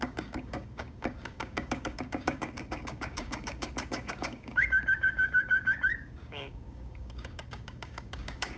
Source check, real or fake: fake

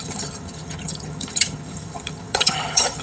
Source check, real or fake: fake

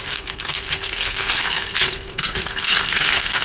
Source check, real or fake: fake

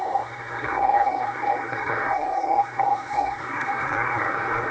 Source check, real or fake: fake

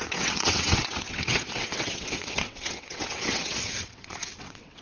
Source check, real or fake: fake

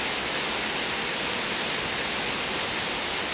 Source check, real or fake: real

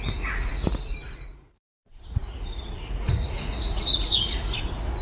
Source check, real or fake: fake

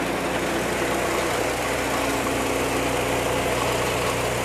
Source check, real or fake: real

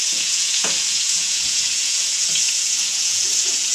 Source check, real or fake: fake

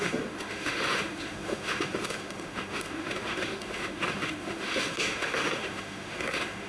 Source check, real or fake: fake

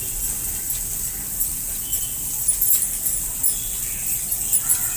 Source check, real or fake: real